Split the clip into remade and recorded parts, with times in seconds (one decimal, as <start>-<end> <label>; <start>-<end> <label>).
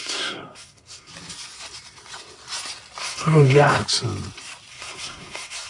0.0-1.1 remade; 1.1-3.0 recorded; 3.0-3.8 remade; 3.8-4.7 recorded; 4.7-5.7 remade